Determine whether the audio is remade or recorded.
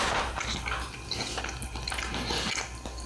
recorded